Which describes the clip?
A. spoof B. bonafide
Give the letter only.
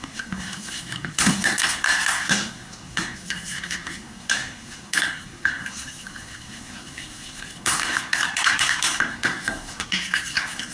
A